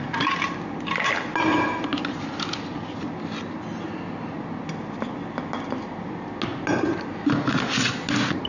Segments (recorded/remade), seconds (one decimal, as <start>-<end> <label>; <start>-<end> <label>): 0.0-8.5 recorded